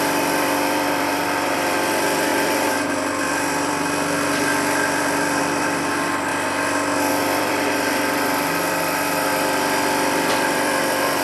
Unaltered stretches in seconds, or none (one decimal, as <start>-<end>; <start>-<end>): 6.3-7.1; 9.3-10.3

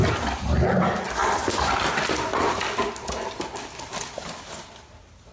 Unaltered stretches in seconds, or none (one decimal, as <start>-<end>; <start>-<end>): 0.0-5.3